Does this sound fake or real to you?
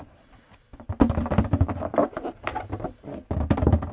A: real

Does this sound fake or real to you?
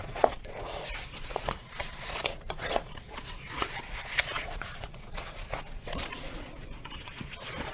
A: fake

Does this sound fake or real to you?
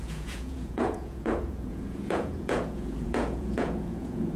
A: fake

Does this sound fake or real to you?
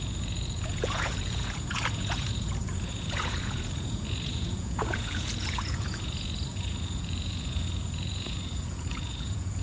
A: fake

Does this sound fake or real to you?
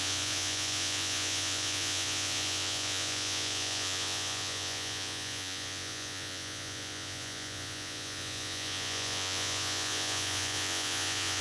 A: fake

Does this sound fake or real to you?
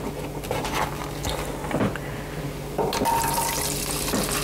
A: real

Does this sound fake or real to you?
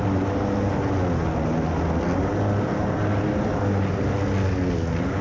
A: real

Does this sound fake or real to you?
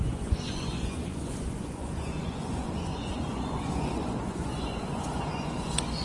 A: fake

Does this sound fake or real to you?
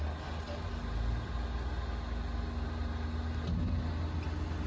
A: real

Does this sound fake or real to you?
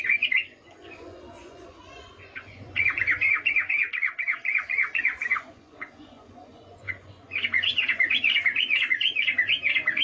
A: fake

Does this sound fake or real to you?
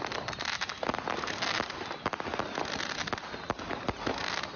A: real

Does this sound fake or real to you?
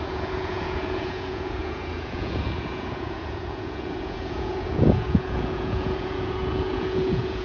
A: fake